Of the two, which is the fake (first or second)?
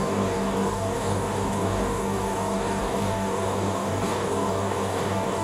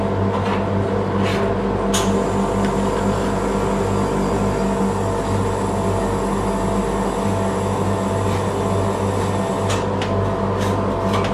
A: first